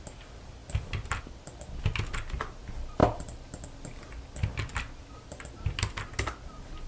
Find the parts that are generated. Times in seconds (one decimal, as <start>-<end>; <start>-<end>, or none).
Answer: none